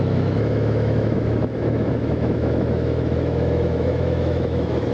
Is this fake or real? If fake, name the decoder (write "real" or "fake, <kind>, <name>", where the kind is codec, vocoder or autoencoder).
fake, autoencoder, DAC-VAE